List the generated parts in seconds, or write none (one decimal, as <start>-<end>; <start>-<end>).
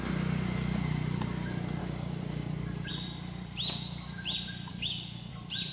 1.8-2.9; 4.7-5.3